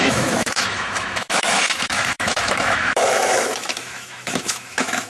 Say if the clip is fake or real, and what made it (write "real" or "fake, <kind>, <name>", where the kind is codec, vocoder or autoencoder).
fake, autoencoder, DAC-VAE